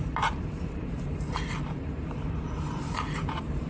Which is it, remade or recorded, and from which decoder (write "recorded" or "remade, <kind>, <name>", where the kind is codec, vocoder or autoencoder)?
remade, vocoder, BigVGAN v2